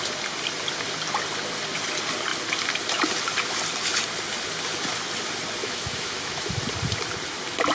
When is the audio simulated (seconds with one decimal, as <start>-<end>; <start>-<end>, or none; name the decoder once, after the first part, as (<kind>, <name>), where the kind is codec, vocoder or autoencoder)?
5.6-6.5 (autoencoder, DAC-VAE)